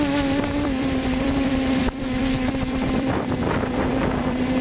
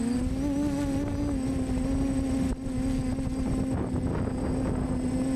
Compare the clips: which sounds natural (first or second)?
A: second